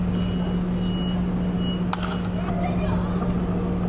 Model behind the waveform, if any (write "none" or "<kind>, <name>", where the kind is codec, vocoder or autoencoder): none